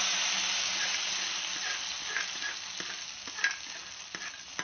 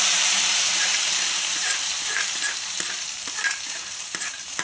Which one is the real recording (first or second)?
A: first